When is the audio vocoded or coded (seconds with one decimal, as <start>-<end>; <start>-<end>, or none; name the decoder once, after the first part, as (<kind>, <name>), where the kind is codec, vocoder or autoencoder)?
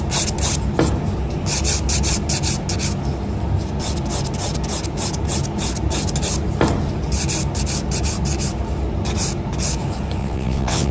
10.2-10.9 (vocoder, WaveNeXt)